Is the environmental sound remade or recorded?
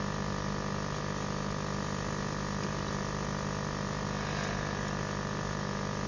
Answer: recorded